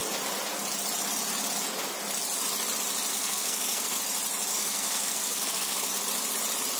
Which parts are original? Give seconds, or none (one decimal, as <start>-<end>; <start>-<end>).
0.0-3.1; 4.0-4.5; 5.9-6.8